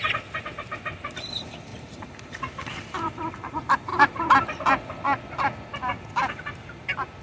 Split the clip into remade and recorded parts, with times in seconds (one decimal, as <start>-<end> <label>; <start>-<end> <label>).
0.0-1.7 recorded; 1.7-3.3 remade; 3.3-3.9 recorded; 3.9-4.7 remade; 4.7-7.2 recorded